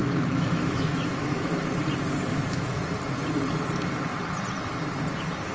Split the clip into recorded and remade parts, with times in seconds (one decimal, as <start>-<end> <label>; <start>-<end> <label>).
0.0-1.5 remade; 1.5-2.3 recorded; 2.3-2.8 remade; 2.8-5.5 recorded